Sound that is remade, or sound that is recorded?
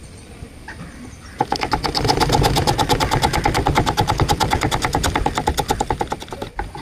recorded